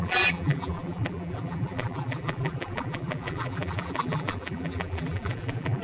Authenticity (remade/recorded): remade